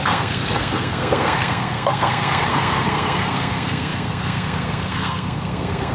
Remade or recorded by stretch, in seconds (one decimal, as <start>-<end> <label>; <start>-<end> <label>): 0.0-5.9 remade